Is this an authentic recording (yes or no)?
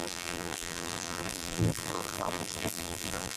no